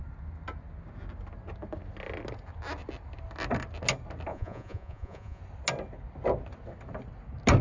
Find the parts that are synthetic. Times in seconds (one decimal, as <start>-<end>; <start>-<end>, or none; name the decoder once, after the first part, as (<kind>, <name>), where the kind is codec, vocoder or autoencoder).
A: 4.3-5.4 (vocoder, Vocos)